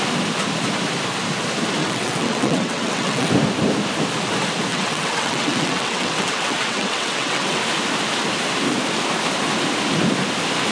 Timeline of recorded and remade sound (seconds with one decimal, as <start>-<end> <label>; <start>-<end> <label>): 0.0-1.8 recorded; 1.8-3.3 remade; 3.3-4.7 recorded; 4.7-7.6 remade; 7.6-10.7 recorded